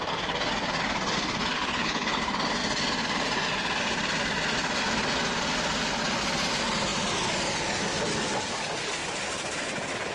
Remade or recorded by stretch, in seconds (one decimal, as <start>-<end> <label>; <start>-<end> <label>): 0.0-1.5 recorded; 1.5-2.2 remade; 2.2-10.1 recorded